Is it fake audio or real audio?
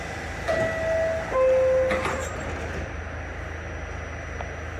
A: real